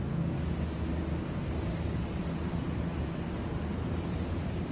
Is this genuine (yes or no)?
yes